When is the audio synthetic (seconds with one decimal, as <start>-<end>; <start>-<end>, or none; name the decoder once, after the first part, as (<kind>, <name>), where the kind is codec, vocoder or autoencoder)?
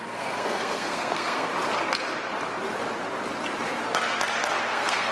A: 0.0-1.5 (codec, SNAC); 4.6-5.1